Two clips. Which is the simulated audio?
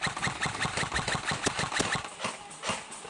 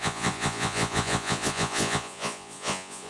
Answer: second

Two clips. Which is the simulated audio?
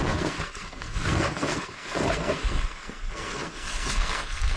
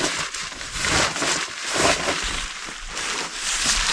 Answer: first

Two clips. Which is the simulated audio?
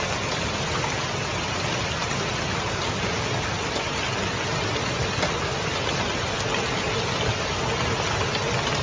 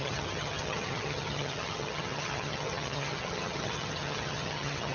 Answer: second